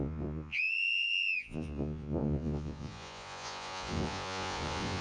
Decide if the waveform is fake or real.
fake